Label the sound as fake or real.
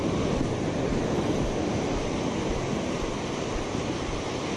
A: real